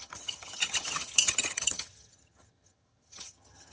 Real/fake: fake